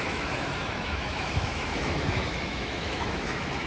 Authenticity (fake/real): fake